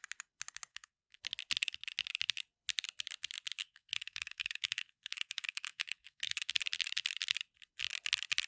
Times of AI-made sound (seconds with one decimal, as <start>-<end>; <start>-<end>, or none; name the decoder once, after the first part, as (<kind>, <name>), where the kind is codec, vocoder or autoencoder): 0.7-1.2 (codec, SNAC); 3.6-6.5